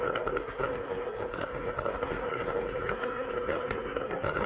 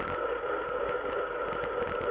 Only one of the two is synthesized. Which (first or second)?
first